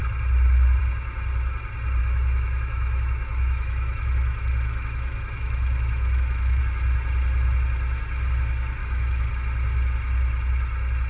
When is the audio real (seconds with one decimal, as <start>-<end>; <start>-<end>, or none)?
0.0-2.0; 6.6-8.8; 9.3-11.1